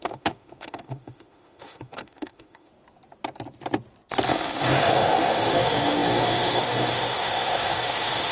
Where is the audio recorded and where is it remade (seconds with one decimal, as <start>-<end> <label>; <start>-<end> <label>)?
0.0-2.7 remade; 2.7-4.3 recorded; 4.3-8.3 remade